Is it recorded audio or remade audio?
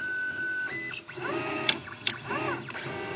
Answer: recorded